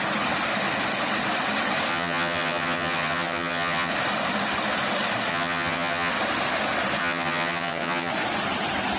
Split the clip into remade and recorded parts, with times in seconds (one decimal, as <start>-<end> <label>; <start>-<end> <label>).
0.0-1.9 recorded; 1.9-3.9 remade; 3.9-5.3 recorded; 5.3-6.1 remade; 6.1-7.0 recorded; 7.0-8.1 remade; 8.1-9.0 recorded